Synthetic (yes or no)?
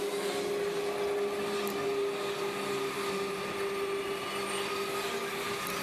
no